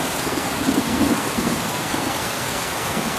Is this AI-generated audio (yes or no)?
yes